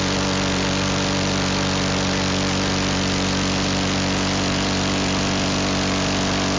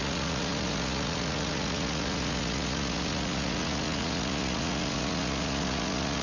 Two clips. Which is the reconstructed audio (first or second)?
second